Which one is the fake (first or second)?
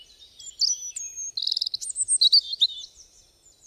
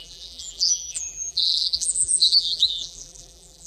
second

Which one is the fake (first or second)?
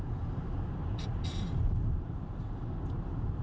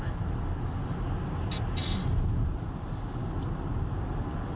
first